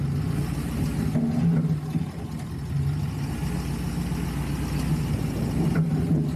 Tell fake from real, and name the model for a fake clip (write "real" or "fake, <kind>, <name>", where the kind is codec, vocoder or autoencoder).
real